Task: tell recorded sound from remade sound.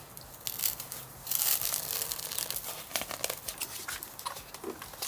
recorded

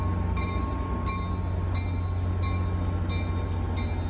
recorded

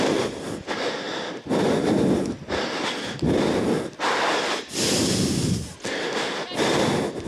recorded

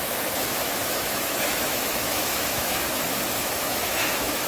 remade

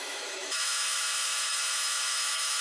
remade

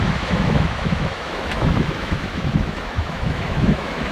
remade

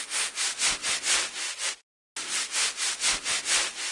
recorded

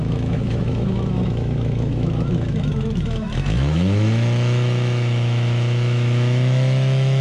remade